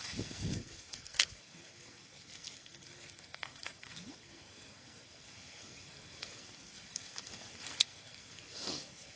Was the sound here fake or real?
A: fake